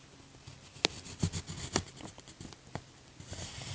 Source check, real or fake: real